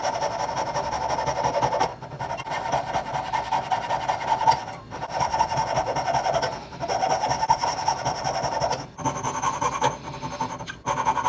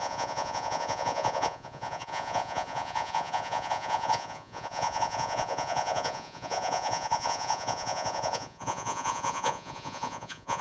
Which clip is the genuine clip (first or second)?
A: first